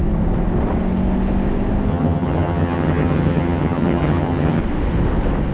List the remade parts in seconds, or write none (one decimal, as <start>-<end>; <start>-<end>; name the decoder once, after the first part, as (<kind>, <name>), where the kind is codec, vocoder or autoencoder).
1.9-4.6 (vocoder, HiFi-GAN)